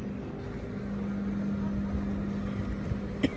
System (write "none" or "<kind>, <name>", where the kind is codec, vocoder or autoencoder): none